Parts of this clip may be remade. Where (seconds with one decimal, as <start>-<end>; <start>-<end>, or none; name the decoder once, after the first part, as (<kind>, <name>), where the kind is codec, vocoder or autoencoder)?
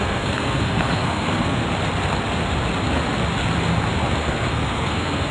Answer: 0.0-1.6 (codec, SNAC); 4.2-5.3